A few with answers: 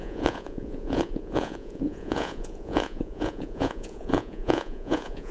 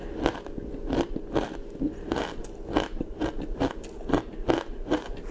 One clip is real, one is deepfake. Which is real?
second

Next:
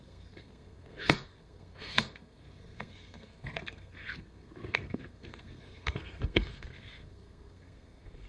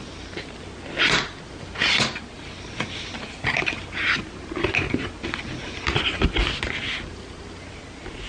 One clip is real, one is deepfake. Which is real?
second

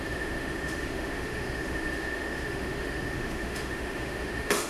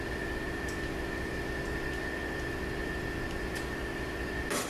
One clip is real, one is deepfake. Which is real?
second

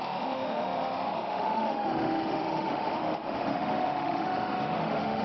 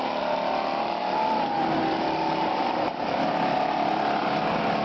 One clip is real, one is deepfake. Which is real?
second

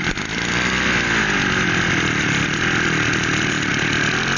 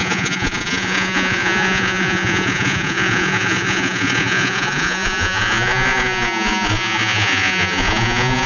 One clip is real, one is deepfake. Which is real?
first